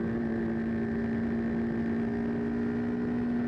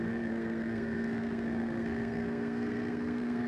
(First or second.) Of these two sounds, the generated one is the second